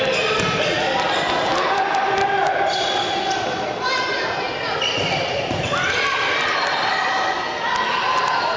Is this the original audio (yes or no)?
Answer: yes